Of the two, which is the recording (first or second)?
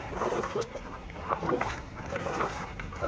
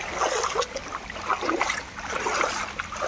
second